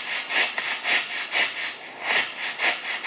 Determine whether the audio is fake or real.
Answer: real